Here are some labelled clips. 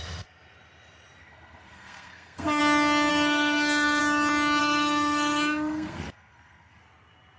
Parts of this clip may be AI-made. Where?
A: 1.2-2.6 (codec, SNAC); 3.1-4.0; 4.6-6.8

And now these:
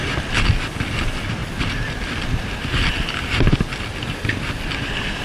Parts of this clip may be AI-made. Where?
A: none